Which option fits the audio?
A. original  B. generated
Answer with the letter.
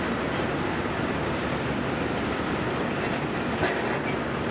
A